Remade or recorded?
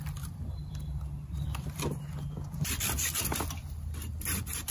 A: remade